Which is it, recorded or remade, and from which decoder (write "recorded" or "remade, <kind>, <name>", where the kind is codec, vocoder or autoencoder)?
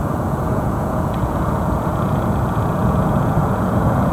remade, vocoder, Vocos